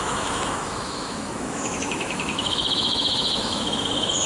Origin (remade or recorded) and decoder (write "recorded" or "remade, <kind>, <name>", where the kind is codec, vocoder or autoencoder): remade, autoencoder, DAC-VAE